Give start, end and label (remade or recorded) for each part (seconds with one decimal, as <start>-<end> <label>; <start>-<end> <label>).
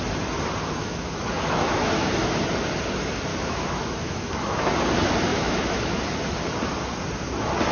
0.0-0.8 recorded; 0.8-2.1 remade; 2.1-3.3 recorded; 3.3-4.7 remade; 4.7-5.3 recorded; 5.3-6.0 remade; 6.0-7.7 recorded